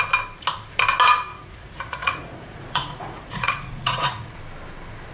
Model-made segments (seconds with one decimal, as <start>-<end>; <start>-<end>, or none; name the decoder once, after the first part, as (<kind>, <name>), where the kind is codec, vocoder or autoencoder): 1.3-4.4 (vocoder, Vocos)